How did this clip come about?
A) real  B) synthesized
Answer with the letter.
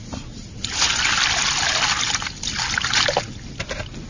A